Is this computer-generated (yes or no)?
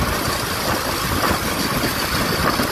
no